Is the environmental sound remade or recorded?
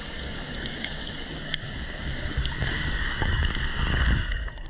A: remade